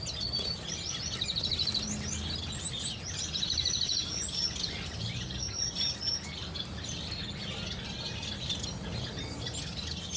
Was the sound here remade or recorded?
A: recorded